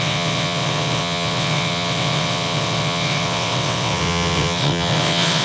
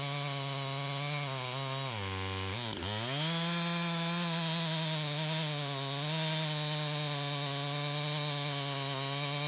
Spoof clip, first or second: first